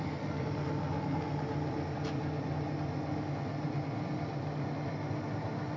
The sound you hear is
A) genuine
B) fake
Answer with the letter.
A